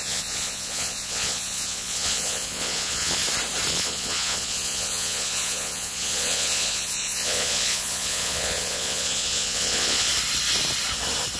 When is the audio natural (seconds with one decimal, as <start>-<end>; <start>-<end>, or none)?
3.2-3.7; 10.1-11.4